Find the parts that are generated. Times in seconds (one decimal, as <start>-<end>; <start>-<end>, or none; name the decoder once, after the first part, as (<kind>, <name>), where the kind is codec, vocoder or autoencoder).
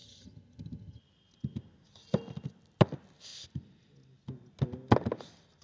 0.0-1.0 (vocoder, HiFi-GAN)